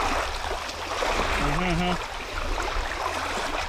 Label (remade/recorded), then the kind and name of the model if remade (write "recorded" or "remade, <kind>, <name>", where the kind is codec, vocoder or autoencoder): recorded